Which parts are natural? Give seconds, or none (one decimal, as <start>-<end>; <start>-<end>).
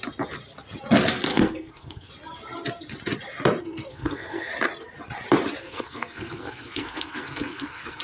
0.0-1.3; 2.1-3.6; 4.5-5.6